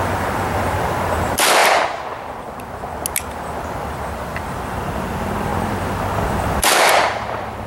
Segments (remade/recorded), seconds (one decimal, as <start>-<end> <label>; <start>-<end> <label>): 0.0-1.6 remade; 1.6-3.3 recorded; 3.3-5.5 remade; 5.5-6.4 recorded; 6.4-7.7 remade